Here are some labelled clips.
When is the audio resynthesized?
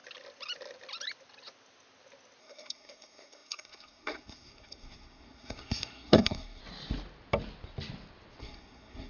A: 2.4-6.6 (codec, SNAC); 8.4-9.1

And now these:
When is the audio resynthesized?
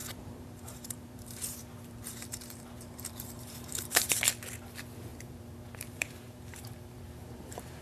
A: 0.0-4.1 (vocoder, BigVGAN v2); 5.1-7.8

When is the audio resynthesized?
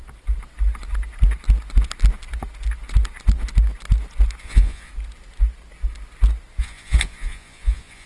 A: 4.4-4.9 (vocoder, Vocos); 6.6-8.1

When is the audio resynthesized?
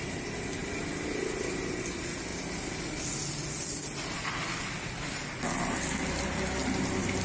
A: none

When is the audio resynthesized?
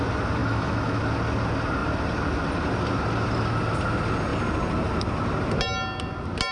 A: 0.4-1.0 (autoencoder, DAC-VAE)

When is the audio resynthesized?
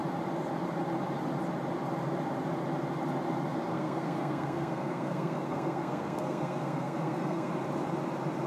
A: 3.7-7.5 (codec, SNAC)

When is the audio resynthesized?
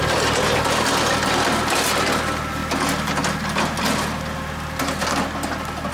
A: none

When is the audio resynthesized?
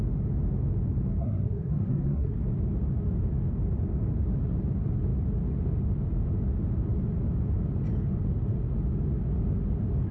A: 1.2-2.4 (codec, SNAC)